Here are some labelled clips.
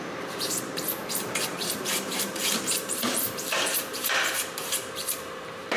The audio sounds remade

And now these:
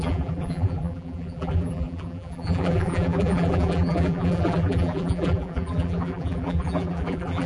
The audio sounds remade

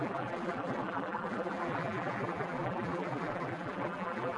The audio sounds remade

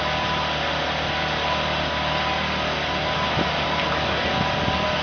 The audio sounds recorded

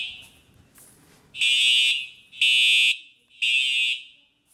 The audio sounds recorded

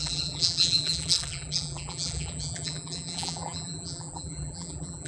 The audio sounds remade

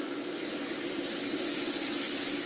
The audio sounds recorded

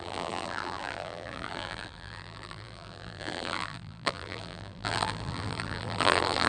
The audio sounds remade